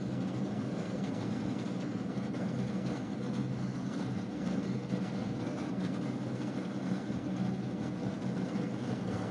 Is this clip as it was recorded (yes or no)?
no